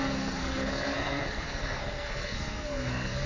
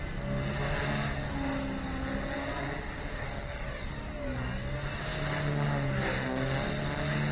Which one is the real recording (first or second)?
second